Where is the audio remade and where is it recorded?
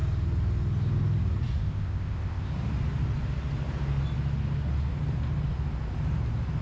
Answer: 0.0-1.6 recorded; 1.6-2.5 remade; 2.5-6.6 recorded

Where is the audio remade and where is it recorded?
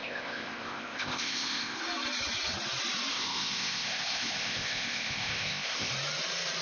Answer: 0.0-1.8 remade; 1.8-3.1 recorded; 3.1-5.9 remade; 5.9-6.6 recorded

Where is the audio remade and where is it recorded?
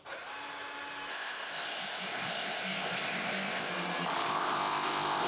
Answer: 0.0-1.1 recorded; 1.1-3.7 remade; 3.7-4.3 recorded; 4.3-5.3 remade